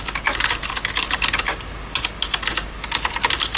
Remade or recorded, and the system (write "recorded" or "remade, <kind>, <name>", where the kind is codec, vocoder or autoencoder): recorded